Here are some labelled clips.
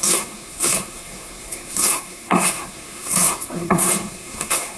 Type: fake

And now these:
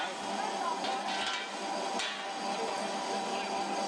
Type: real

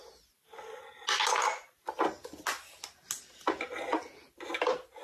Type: real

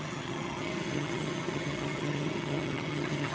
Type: fake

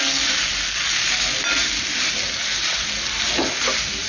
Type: real